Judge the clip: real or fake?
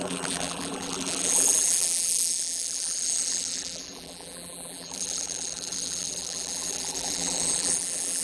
fake